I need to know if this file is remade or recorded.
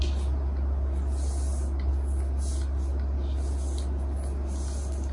recorded